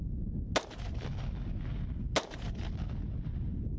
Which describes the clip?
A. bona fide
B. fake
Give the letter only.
A